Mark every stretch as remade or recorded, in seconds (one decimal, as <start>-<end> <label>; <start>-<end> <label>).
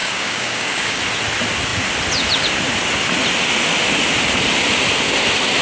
0.0-1.0 remade; 1.0-5.6 recorded